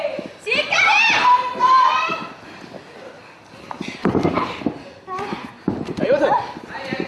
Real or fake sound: fake